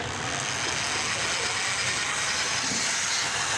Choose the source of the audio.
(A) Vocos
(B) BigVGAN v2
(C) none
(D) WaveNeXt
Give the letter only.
C